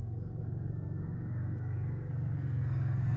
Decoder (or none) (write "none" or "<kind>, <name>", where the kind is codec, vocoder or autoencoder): codec, SNAC